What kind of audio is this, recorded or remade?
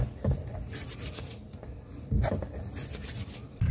remade